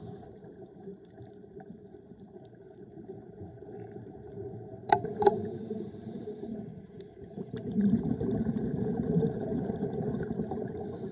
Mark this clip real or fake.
fake